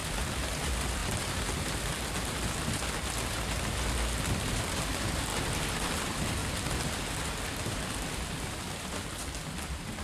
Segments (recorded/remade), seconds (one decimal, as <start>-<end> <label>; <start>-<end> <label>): 0.0-1.0 remade; 1.0-4.6 recorded; 4.6-6.4 remade; 6.4-7.9 recorded; 7.9-10.0 remade